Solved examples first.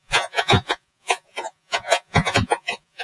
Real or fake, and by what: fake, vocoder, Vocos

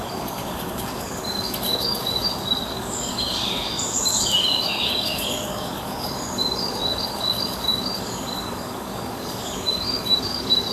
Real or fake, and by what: fake, codec, DAC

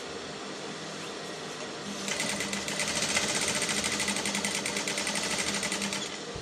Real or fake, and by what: real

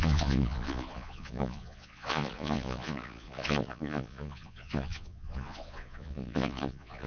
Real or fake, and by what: fake, vocoder, Vocos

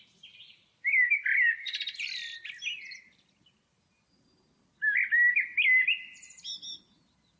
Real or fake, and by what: real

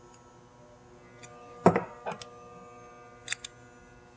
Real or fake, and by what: real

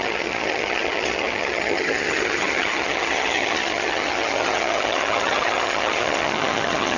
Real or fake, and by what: fake, vocoder, HiFi-GAN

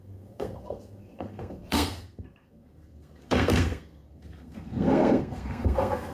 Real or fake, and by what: fake, codec, SNAC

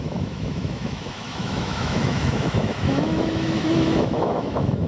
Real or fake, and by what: fake, autoencoder, DAC-VAE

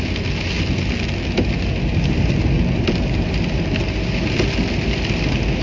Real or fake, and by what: real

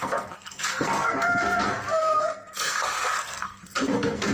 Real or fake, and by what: fake, codec, SNAC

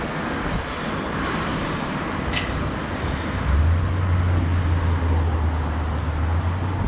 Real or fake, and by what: real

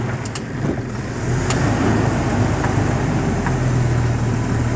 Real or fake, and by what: real